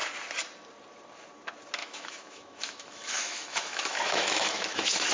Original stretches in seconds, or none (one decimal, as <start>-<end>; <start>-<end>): 0.0-1.8